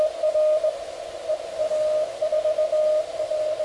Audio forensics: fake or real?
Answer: real